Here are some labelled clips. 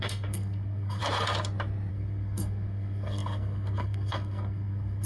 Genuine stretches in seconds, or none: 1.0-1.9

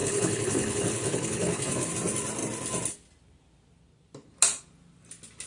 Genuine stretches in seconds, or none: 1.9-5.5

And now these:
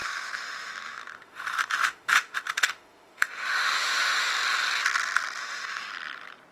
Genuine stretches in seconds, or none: 4.3-5.4; 5.9-6.5

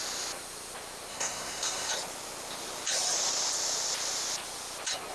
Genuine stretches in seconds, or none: 0.0-1.1; 1.9-5.1

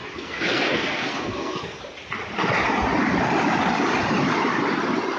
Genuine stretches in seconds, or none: 1.8-5.2

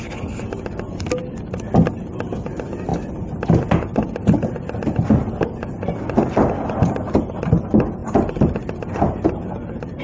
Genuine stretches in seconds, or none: 0.0-10.0

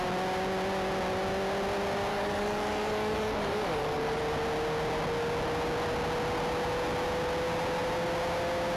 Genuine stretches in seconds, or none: 0.0-2.1; 4.2-8.8